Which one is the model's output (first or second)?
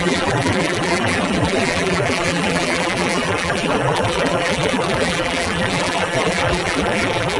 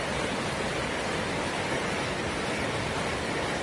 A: first